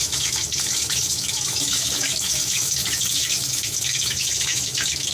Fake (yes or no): yes